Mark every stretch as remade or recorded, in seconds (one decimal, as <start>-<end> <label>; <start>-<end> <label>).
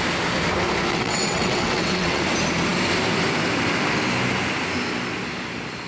0.0-0.9 recorded; 0.9-2.2 remade; 2.2-5.9 recorded